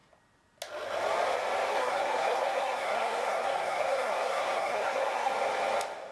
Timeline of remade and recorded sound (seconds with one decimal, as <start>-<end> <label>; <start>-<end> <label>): 0.0-1.7 recorded; 1.7-5.3 remade; 5.3-6.1 recorded